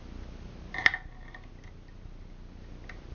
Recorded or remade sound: recorded